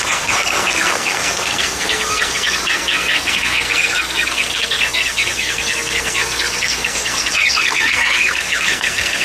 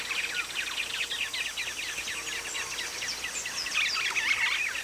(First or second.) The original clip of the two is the second